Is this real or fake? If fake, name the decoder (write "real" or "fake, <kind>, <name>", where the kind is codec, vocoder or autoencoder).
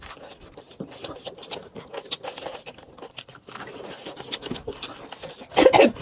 real